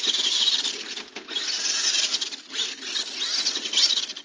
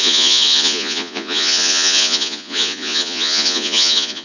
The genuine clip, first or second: first